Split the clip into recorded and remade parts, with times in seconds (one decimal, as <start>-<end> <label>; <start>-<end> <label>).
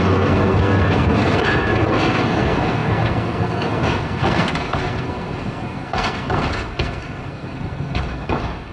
0.0-8.7 remade